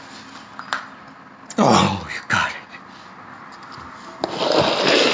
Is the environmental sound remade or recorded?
recorded